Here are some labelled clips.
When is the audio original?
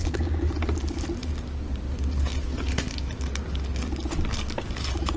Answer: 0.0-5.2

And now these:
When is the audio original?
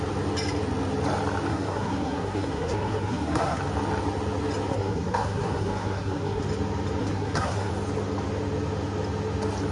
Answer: 0.0-1.5; 3.6-4.7; 6.4-7.0; 7.7-9.7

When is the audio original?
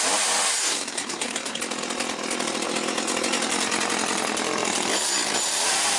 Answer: 0.0-0.6; 1.6-6.0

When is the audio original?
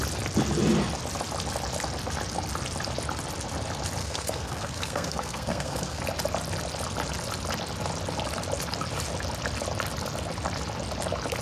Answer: 0.0-4.0; 6.0-11.4